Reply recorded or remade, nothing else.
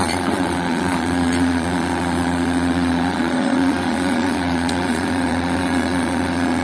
remade